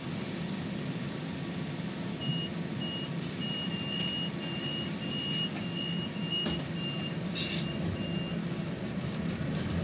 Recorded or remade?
recorded